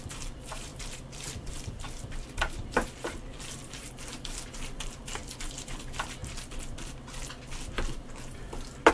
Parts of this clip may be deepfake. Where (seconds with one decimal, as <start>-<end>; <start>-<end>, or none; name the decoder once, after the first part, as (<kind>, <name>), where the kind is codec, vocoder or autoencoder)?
0.0-6.2 (vocoder, BigVGAN v2)